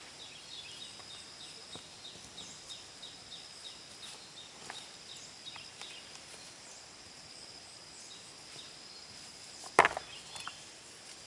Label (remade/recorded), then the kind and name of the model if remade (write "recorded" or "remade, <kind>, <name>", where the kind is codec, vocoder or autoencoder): recorded